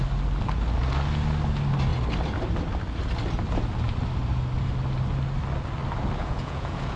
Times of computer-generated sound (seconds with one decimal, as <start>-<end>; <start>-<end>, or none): 6.2-7.0